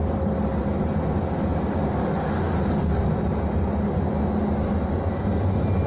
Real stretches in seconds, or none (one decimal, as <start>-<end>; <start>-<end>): 0.0-2.0; 3.0-5.9